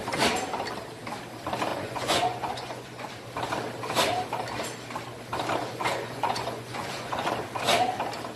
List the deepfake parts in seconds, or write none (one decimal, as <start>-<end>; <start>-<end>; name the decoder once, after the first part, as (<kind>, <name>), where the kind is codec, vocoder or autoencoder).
1.7-3.1 (vocoder, Vocos); 5.6-7.3